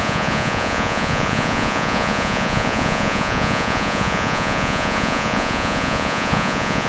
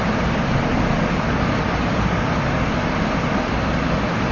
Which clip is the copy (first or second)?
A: first